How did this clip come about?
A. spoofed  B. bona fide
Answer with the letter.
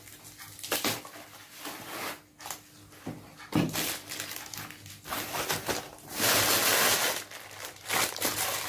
B